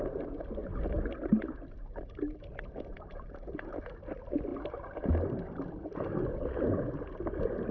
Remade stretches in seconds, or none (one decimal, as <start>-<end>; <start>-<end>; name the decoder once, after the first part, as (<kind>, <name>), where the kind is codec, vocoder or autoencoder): 2.9-3.8 (vocoder, BigVGAN v2)